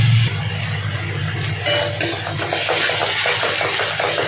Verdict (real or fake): real